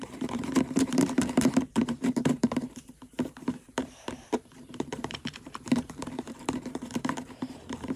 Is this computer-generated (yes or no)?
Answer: yes